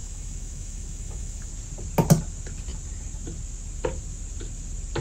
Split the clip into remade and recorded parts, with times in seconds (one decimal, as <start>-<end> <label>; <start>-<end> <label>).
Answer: 0.0-1.5 remade; 1.5-5.0 recorded